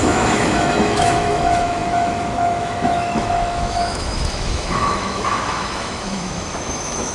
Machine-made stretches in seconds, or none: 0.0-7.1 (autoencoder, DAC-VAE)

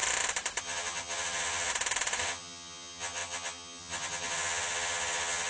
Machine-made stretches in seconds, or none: 0.6-1.7 (vocoder, HiFi-GAN); 2.2-5.5

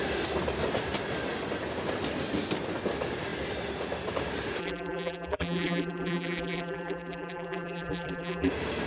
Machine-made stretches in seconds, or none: 4.6-8.5 (vocoder, BigVGAN v2)

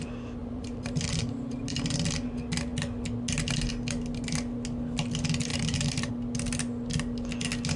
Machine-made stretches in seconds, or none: 0.4-1.6 (vocoder, BigVGAN v2); 5.5-6.1

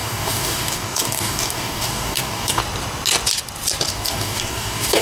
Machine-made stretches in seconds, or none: 0.0-2.6 (codec, DAC); 3.9-5.0

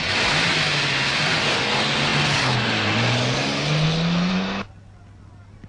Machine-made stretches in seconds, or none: none

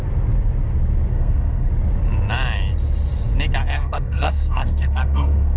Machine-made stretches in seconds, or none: 1.1-1.7 (codec, SNAC); 3.7-5.6